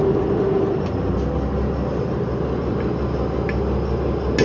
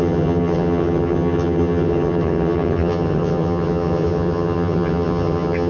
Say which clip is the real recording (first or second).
first